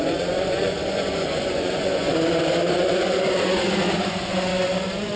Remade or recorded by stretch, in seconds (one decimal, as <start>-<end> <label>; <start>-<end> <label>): 0.0-4.5 remade; 4.5-5.2 recorded